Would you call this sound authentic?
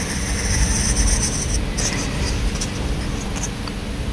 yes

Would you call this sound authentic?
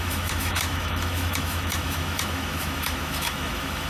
no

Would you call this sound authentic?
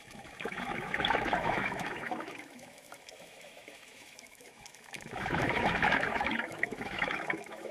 no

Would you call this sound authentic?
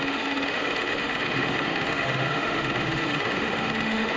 no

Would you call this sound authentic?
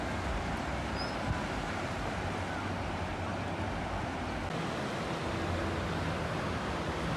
yes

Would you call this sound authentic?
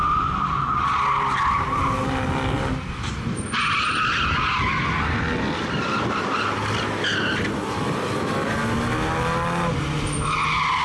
yes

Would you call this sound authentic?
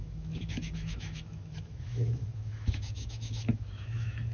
no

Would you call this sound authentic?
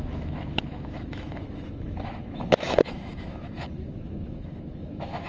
no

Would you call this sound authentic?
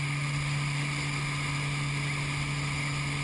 yes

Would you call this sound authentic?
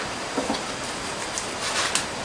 yes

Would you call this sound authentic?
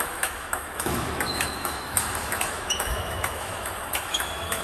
no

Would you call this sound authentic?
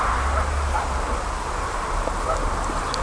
yes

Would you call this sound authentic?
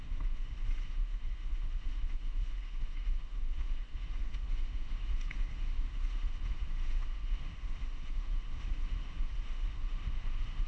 no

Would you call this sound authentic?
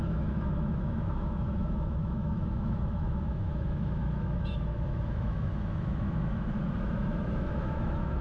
no